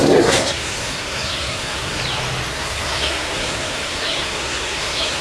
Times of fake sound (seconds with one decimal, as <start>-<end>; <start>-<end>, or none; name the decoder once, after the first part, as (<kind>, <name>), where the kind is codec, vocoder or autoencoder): 0.0-2.0 (codec, SNAC); 2.5-5.2